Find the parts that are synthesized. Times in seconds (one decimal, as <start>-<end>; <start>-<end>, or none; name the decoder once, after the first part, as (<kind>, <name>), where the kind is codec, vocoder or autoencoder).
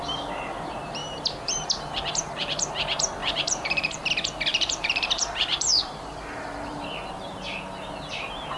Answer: 1.0-2.7 (vocoder, BigVGAN v2); 3.2-4.1; 4.5-6.8